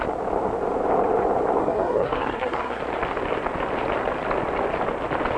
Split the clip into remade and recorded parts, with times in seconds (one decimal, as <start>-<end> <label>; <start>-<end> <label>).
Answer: 0.0-1.6 recorded; 1.6-2.8 remade; 2.8-5.4 recorded